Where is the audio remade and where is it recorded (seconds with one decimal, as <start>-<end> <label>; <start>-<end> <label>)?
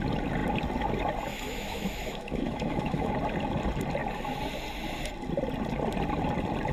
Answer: 0.0-1.3 recorded; 1.3-3.1 remade; 3.1-6.7 recorded